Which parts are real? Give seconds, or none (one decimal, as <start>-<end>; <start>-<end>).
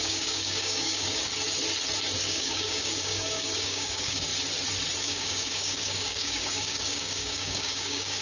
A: 1.3-2.2; 4.3-5.0